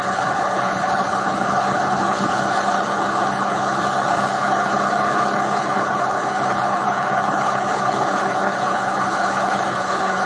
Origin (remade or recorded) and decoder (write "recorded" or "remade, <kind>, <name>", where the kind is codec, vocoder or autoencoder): remade, codec, HILCodec